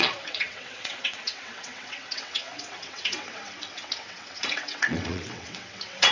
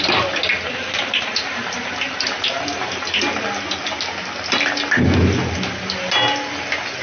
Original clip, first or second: second